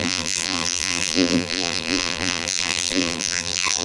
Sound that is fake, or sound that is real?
fake